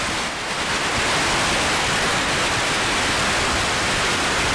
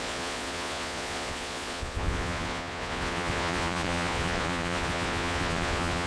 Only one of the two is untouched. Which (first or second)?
first